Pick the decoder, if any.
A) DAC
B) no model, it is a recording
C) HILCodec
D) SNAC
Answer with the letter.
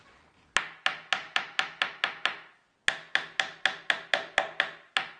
B